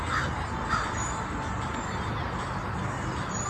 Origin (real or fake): real